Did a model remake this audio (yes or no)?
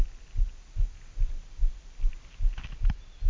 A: no